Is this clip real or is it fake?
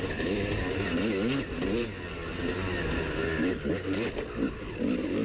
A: real